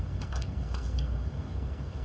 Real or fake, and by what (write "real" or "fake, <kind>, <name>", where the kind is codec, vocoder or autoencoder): fake, codec, SNAC